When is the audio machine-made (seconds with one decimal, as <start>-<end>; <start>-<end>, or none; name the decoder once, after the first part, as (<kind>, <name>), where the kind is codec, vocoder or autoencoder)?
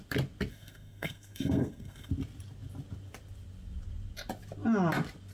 0.5-2.1 (codec, SNAC)